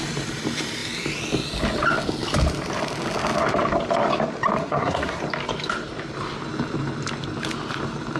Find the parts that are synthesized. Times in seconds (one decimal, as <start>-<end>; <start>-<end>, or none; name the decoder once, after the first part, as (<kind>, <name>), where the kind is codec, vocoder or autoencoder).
4.6-5.2 (codec, SNAC)